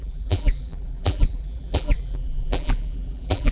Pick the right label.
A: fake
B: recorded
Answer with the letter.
A